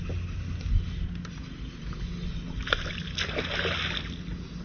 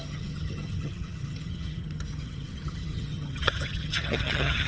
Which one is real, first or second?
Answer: first